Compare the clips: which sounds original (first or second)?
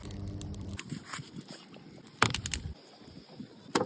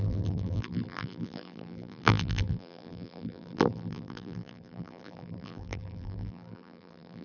first